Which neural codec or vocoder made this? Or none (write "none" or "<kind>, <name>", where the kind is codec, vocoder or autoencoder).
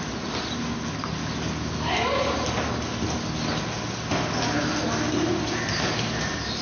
none